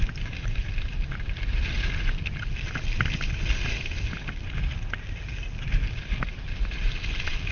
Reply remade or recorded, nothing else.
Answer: recorded